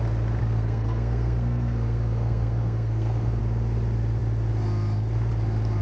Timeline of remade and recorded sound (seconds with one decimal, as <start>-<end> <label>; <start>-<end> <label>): 0.0-0.4 recorded; 0.4-3.4 remade; 3.4-5.8 recorded